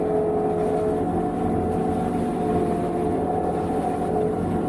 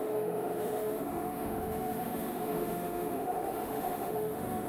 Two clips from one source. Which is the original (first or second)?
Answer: first